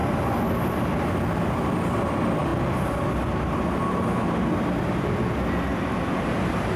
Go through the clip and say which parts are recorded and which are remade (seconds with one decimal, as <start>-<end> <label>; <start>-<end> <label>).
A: 0.0-6.8 recorded